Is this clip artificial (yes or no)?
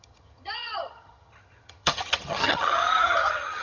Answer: yes